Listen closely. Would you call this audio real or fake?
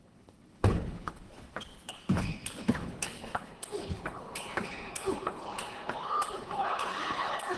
fake